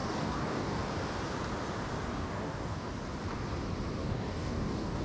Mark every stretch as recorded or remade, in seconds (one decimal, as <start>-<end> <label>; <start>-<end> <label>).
0.0-0.8 remade; 0.8-2.1 recorded; 2.1-2.9 remade; 2.9-4.0 recorded; 4.0-5.0 remade